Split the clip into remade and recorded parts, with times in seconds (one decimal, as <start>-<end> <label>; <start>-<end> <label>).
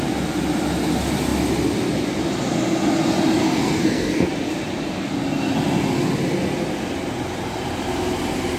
0.0-3.4 recorded; 3.4-4.3 remade; 4.3-8.6 recorded